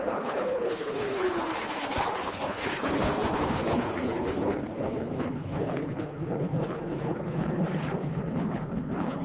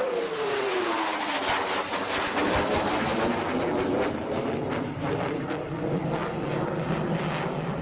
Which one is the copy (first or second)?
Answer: first